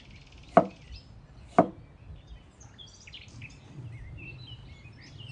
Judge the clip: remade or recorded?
recorded